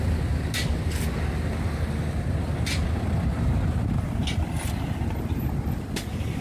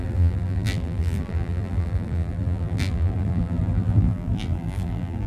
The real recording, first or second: first